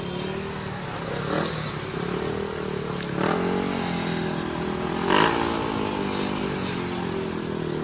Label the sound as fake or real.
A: real